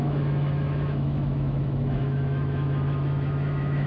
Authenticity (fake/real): fake